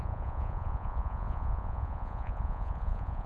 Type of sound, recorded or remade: remade